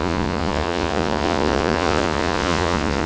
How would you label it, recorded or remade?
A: remade